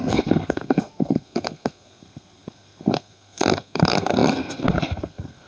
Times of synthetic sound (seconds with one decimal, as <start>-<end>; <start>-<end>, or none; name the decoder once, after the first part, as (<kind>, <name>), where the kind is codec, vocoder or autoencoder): 0.0-5.5 (codec, SNAC)